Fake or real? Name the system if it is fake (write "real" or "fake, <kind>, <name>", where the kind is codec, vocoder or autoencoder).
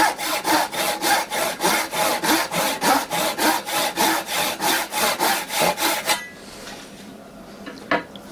real